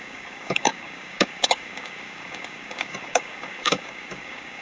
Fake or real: fake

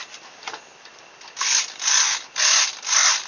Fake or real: real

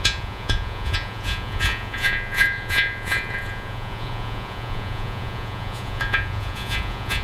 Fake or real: fake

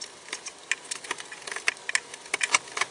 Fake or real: real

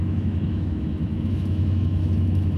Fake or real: fake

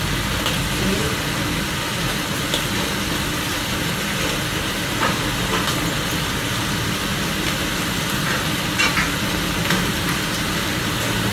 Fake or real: real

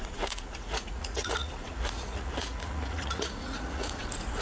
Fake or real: fake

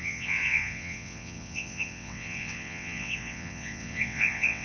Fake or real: fake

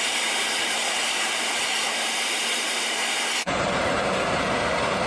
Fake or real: fake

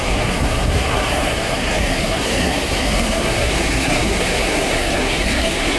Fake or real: fake